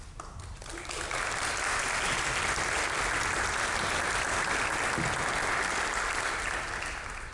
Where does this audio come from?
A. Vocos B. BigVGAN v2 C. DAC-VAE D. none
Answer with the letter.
D